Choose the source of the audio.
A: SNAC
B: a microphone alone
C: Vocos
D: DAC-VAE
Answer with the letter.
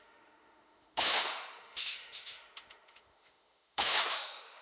D